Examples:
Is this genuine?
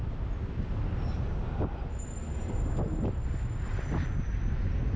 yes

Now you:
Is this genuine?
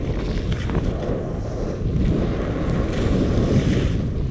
yes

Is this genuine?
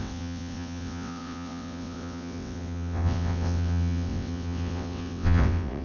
no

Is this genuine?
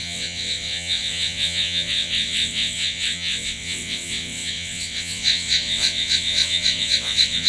no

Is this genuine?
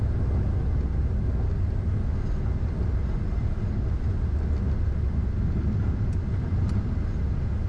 yes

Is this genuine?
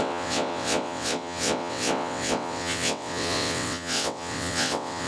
no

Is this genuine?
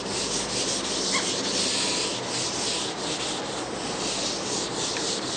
yes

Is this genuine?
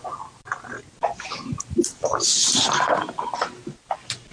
yes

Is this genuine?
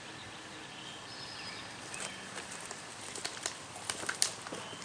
yes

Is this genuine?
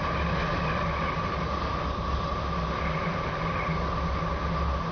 yes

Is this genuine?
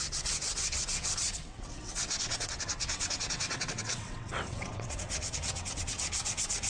no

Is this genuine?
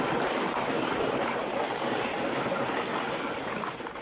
yes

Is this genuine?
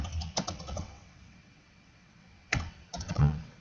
no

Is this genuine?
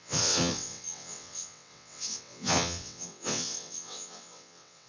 no